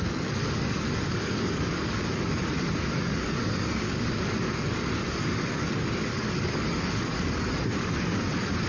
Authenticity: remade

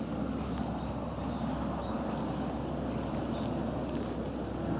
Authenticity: recorded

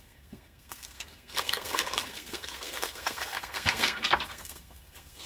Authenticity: remade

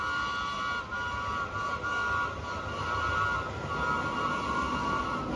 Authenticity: recorded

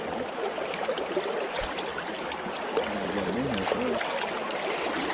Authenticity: remade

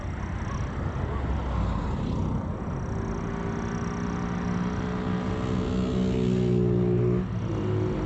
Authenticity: recorded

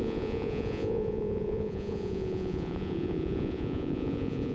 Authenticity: remade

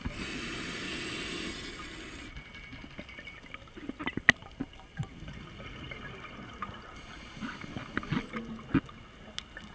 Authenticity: recorded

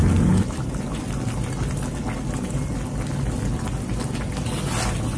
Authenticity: recorded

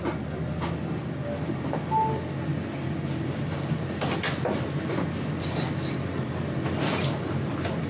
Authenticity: recorded